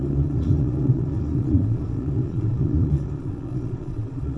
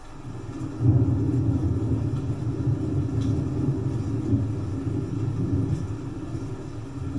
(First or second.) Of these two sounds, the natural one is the second